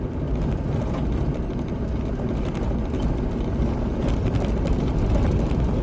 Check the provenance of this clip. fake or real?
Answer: real